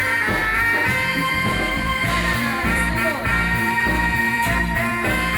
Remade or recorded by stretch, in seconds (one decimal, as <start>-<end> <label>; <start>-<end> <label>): 0.0-1.7 recorded; 1.7-4.9 remade; 4.9-5.4 recorded